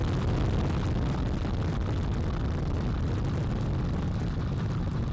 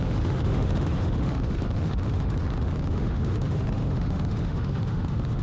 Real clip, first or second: first